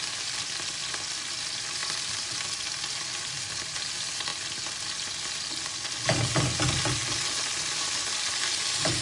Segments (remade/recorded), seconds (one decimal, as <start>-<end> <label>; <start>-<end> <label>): 0.0-9.0 recorded